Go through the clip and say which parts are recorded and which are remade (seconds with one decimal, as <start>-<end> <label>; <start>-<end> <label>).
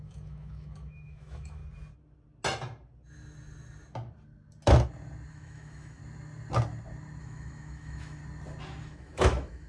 0.0-1.6 remade; 1.6-5.3 recorded; 5.3-6.0 remade; 6.0-7.2 recorded; 7.2-8.2 remade; 8.2-8.8 recorded; 8.8-9.7 remade